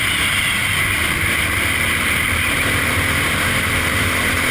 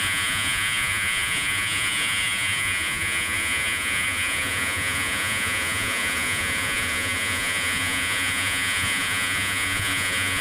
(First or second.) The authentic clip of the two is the first